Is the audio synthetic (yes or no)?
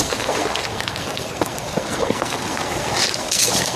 yes